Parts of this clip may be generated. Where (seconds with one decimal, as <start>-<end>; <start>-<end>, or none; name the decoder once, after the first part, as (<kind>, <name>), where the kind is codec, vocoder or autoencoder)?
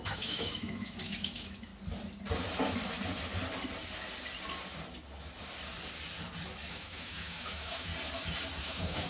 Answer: 0.0-1.7 (autoencoder, DAC-VAE); 6.7-7.9; 8.6-9.1